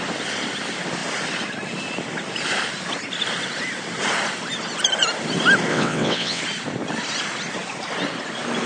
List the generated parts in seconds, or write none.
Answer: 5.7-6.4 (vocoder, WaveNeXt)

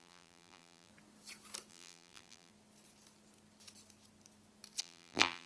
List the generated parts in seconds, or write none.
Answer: 0.0-0.9 (vocoder, BigVGAN v2); 1.7-2.5; 4.8-5.5

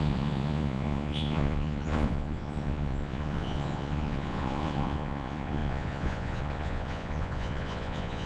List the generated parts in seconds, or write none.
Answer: 0.0-8.3 (vocoder, Vocos)

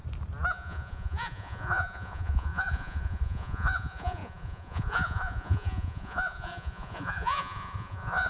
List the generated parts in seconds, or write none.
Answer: 0.5-8.3 (vocoder, Vocos)

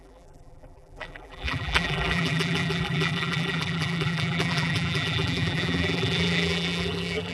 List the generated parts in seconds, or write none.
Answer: 0.0-7.3 (vocoder, BigVGAN v2)

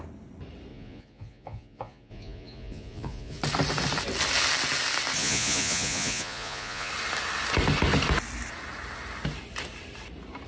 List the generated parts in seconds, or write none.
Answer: 0.7-3.4 (vocoder, Vocos); 5.2-6.9

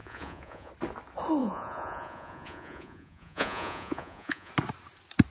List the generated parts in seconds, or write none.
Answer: 0.0-0.7 (vocoder, Vocos); 1.4-4.5